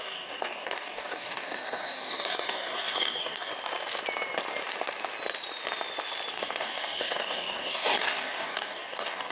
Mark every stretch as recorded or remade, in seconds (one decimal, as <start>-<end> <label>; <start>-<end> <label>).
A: 0.0-3.5 remade; 3.5-6.3 recorded; 6.3-9.3 remade